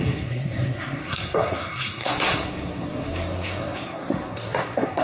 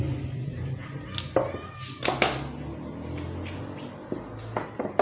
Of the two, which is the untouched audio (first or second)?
second